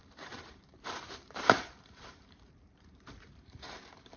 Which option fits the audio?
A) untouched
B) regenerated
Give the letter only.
B